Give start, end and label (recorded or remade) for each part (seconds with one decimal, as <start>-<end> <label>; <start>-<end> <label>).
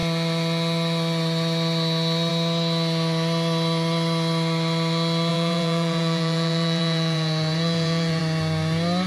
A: 0.0-5.3 recorded; 5.3-8.2 remade; 8.2-9.1 recorded